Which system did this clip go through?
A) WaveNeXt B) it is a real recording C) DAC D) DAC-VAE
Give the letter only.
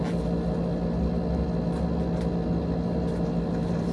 B